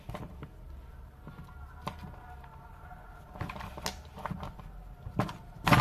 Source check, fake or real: real